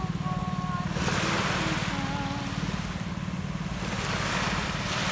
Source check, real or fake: real